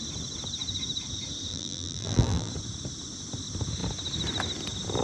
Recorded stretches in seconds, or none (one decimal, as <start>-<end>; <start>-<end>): 0.0-1.5; 2.5-5.0